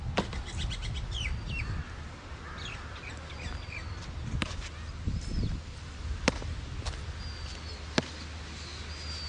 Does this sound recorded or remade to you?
recorded